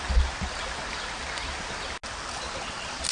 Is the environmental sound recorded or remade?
recorded